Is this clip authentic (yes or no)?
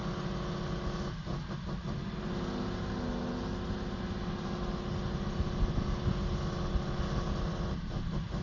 yes